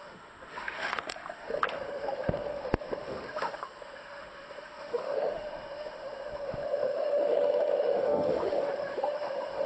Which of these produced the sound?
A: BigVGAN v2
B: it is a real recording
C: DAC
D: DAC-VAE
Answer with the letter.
D